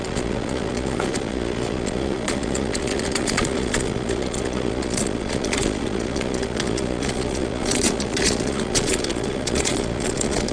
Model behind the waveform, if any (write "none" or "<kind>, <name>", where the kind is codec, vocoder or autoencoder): vocoder, Vocos